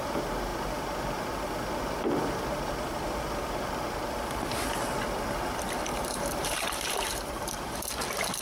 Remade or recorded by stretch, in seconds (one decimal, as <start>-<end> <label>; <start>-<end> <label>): 0.0-5.9 recorded; 5.9-7.6 remade; 7.6-8.4 recorded

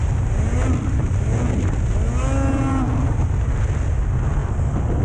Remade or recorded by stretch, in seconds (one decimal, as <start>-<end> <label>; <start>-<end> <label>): 0.0-5.0 recorded